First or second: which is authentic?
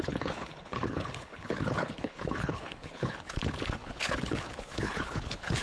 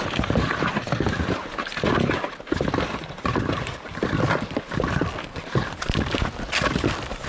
second